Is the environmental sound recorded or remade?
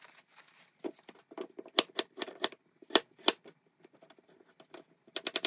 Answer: recorded